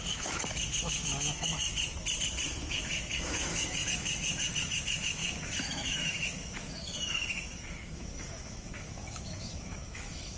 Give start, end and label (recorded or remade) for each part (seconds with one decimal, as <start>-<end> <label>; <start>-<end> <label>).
0.0-1.7 remade; 1.7-2.5 recorded; 2.5-10.4 remade